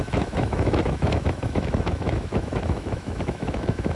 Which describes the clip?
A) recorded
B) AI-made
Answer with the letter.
B